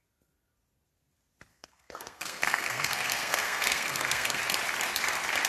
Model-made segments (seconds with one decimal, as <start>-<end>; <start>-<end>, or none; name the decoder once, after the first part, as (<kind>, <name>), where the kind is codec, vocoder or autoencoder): 1.5-4.4 (codec, SNAC)